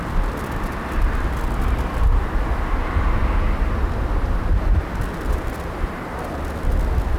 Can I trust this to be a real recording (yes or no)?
yes